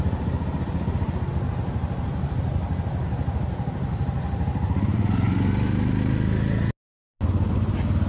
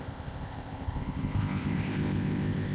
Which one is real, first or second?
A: first